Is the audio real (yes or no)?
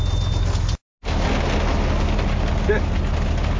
yes